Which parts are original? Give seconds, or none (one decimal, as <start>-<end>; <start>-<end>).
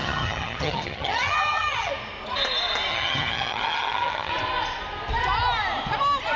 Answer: 1.9-2.9; 4.3-6.4